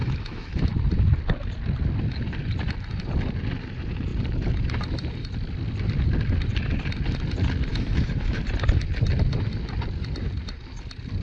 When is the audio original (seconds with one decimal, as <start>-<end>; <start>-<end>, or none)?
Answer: 0.6-7.7; 8.4-11.2